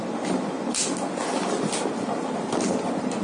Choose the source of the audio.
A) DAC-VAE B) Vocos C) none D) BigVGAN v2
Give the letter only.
C